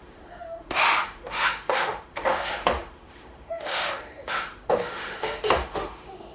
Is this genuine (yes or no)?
no